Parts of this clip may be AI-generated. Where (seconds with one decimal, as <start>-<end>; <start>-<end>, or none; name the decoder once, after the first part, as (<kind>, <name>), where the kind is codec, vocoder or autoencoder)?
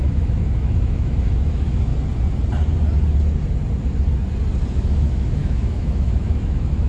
0.0-1.9 (autoencoder, DAC-VAE); 4.7-6.9